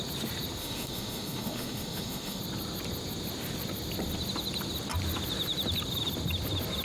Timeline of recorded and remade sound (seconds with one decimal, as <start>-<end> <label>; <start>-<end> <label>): 0.0-0.6 recorded; 0.6-2.4 remade; 2.4-6.8 recorded